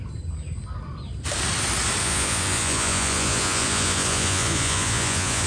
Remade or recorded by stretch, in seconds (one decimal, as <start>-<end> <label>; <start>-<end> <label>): 0.0-2.0 recorded; 2.0-5.5 remade